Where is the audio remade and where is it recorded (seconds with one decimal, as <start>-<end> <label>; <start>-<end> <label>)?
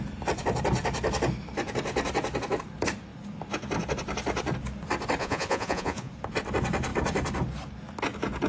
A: 0.0-5.2 recorded; 5.2-6.1 remade; 6.1-8.5 recorded